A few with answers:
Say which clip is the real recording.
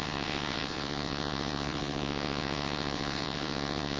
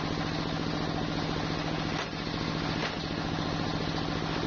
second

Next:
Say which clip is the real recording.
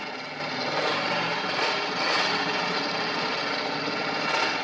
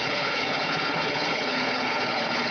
first